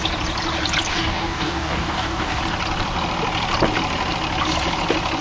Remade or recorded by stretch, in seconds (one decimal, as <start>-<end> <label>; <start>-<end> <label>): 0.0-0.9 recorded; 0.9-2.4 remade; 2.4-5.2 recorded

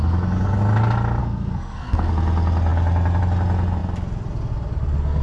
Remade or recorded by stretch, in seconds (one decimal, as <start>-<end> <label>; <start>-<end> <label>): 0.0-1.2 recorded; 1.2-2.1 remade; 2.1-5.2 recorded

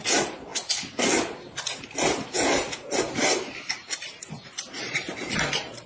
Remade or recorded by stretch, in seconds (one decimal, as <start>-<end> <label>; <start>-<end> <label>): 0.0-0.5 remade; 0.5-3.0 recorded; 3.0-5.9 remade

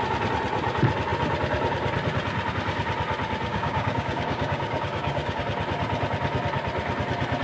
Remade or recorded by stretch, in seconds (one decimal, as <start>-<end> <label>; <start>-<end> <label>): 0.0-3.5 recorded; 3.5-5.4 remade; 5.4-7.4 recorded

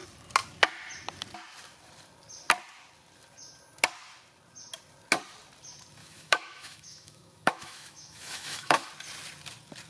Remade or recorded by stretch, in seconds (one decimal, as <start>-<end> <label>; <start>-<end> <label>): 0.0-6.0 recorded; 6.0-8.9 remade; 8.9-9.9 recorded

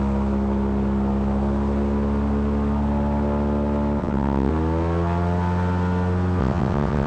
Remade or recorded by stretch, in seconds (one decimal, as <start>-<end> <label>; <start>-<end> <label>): 0.0-4.0 recorded; 4.0-4.5 remade; 4.5-6.4 recorded; 6.4-7.1 remade

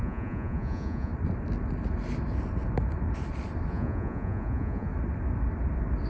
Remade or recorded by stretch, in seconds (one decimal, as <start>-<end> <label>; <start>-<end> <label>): 0.0-1.1 remade; 1.1-3.7 recorded; 3.7-4.9 remade; 4.9-6.1 recorded